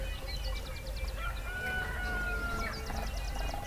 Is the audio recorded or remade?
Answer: recorded